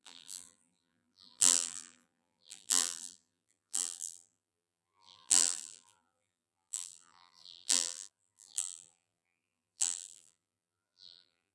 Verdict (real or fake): fake